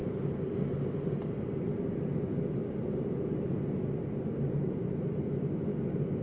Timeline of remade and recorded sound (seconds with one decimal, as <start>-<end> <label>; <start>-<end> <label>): 0.0-6.2 recorded